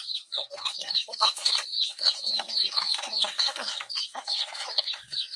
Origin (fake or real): fake